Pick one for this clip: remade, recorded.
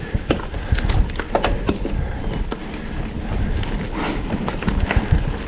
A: recorded